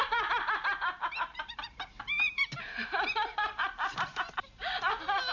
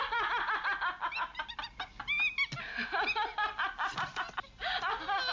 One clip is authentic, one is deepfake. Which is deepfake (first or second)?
first